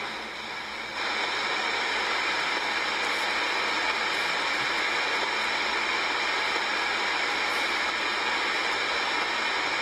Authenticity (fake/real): real